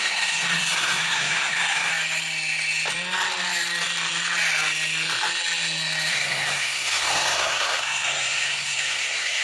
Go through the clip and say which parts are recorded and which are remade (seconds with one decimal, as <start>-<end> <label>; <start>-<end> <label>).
0.0-1.9 remade; 1.9-6.1 recorded; 6.1-9.4 remade